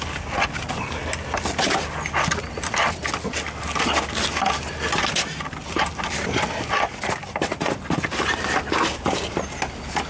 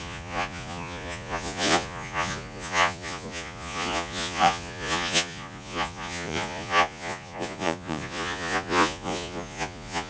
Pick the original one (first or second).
first